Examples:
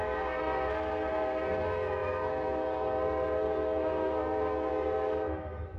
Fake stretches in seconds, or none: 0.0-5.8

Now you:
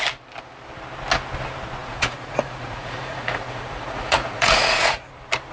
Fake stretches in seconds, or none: 1.8-5.1

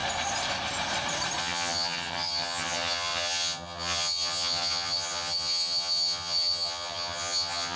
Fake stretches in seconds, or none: 1.4-7.8

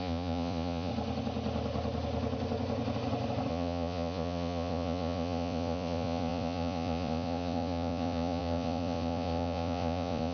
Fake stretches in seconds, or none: 0.0-0.9; 3.5-10.3

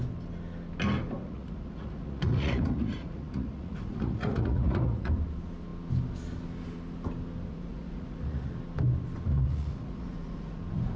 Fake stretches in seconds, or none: 1.2-5.1; 7.5-8.5; 9.3-10.6

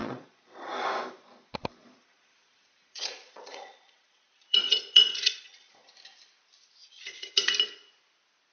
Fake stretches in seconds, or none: 0.0-0.7; 1.8-5.9; 6.8-7.3

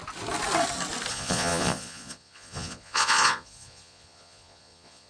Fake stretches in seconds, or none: 1.1-5.1